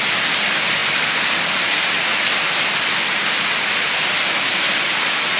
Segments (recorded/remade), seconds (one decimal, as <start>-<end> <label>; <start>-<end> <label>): 0.0-5.4 recorded